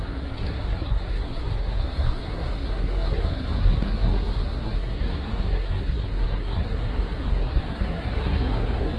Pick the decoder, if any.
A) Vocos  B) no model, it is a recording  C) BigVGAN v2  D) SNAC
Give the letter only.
D